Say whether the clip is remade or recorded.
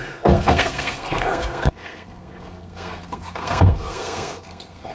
remade